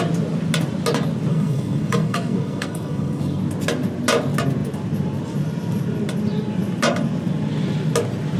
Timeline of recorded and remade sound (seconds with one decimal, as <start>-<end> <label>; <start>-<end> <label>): 0.0-1.3 recorded; 1.3-3.4 remade; 3.4-8.4 recorded